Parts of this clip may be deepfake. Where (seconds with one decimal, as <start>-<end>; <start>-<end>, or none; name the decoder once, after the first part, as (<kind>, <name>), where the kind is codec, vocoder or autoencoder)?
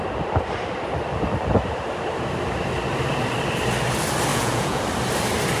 4.3-4.8 (vocoder, Vocos)